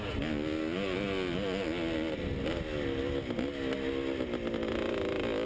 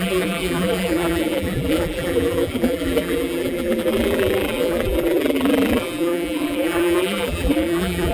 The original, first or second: first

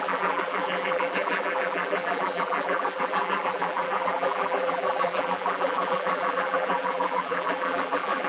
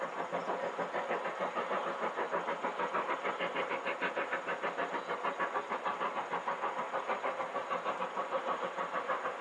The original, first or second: second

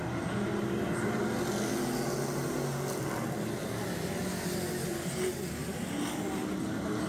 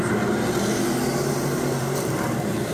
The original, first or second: first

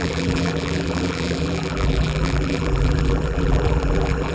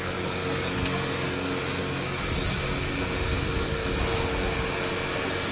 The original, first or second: second